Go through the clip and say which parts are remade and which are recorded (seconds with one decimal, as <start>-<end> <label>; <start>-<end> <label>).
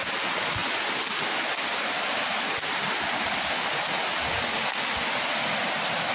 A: 0.0-6.1 recorded